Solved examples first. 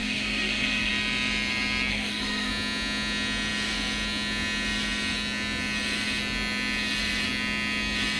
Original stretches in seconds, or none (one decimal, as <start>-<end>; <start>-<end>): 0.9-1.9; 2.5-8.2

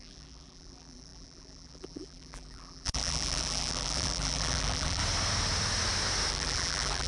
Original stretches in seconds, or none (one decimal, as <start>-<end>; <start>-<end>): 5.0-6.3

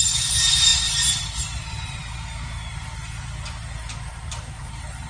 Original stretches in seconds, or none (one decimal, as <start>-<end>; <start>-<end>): 2.0-4.6